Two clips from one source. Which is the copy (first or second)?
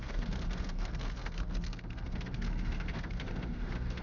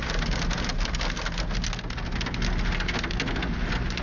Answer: first